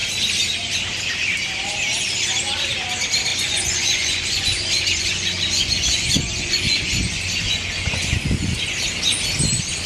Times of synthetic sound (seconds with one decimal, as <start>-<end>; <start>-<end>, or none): 3.3-8.6